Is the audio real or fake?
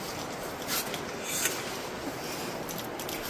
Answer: real